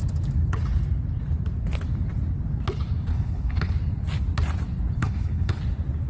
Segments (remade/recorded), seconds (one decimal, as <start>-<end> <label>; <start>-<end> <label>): 0.0-3.1 recorded; 3.1-3.7 remade; 3.7-5.0 recorded; 5.0-5.6 remade; 5.6-6.1 recorded